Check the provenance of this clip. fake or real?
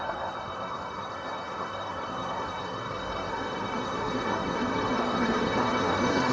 fake